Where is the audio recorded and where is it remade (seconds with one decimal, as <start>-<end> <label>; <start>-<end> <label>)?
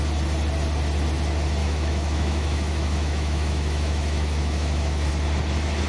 0.0-1.6 recorded; 1.6-5.1 remade; 5.1-5.9 recorded